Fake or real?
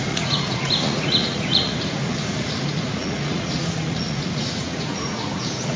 fake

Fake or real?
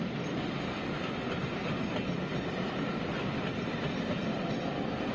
real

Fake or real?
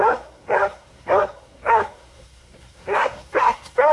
fake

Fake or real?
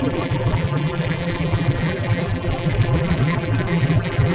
fake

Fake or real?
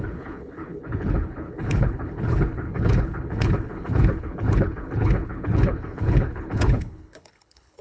fake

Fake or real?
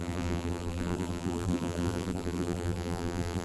fake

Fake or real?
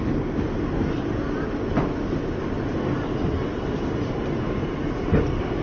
real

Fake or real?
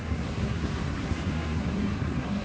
fake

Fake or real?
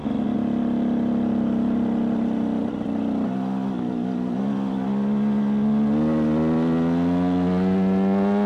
real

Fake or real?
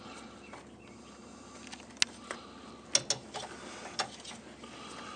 real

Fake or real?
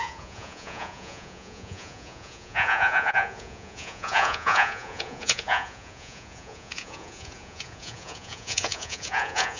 fake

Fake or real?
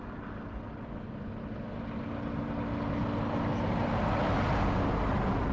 real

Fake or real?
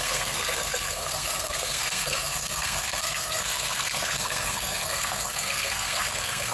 fake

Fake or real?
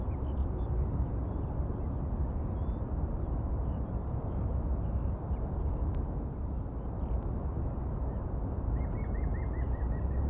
real